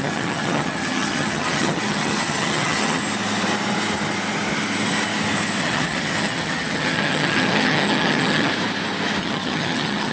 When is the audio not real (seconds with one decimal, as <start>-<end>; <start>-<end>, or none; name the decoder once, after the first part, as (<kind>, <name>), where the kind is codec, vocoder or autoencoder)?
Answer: 0.0-3.0 (vocoder, HiFi-GAN); 5.6-8.5; 9.2-10.1